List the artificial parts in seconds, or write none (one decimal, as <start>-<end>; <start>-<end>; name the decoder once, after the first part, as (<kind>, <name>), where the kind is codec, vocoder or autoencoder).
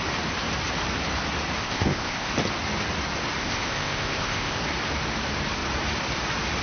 1.6-2.3 (codec, ZipCodec); 3.4-4.6